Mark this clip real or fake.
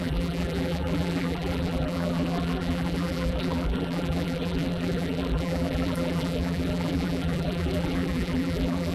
fake